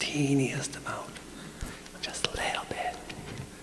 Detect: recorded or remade recorded